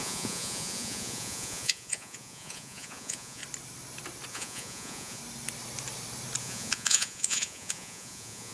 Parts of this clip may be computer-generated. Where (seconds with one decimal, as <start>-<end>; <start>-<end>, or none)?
0.0-3.4; 4.3-5.2; 6.4-8.5